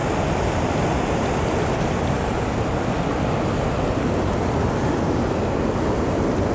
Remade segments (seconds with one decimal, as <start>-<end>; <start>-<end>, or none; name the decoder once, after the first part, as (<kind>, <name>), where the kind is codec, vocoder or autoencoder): none